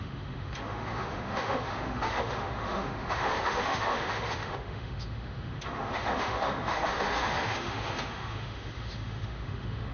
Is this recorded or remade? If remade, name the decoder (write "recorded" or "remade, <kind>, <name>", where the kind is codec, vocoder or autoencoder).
remade, autoencoder, DAC-VAE